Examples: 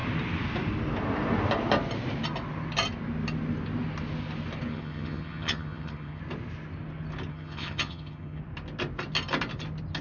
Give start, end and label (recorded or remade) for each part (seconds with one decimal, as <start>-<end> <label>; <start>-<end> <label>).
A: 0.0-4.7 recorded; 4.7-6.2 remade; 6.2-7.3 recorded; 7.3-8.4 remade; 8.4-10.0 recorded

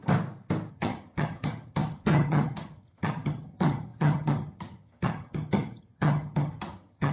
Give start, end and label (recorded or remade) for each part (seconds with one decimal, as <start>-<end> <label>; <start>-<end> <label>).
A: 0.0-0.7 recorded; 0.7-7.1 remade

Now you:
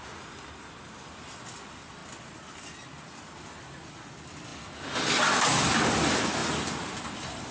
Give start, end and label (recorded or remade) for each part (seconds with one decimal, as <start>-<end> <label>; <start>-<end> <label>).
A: 0.0-7.5 recorded

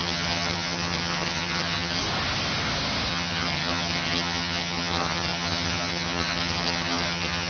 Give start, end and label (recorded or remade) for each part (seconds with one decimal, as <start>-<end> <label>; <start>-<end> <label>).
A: 0.0-2.0 remade; 2.0-3.1 recorded; 3.1-7.5 remade

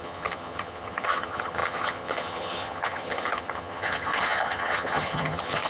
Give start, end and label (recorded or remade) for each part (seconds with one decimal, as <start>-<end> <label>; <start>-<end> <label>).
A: 0.0-5.7 remade

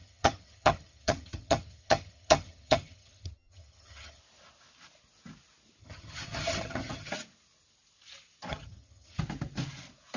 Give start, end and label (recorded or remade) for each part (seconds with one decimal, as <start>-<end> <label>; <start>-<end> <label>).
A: 0.0-4.2 remade; 4.2-5.8 recorded; 5.8-7.1 remade; 7.1-8.5 recorded; 8.5-9.2 remade; 9.2-10.2 recorded

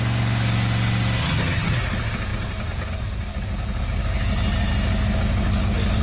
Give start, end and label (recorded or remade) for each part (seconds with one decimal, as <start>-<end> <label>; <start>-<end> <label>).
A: 0.0-1.2 recorded; 1.2-1.8 remade; 1.8-6.0 recorded

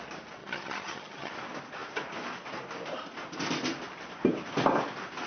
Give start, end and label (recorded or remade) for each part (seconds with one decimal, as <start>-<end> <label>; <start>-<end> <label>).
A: 0.0-0.4 recorded; 0.4-1.3 remade; 1.3-5.3 recorded